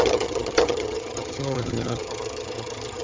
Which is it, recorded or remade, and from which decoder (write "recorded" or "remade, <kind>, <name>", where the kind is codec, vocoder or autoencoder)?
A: remade, vocoder, HiFi-GAN